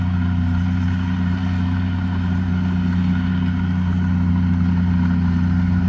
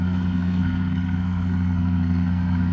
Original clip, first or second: first